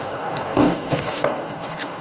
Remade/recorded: remade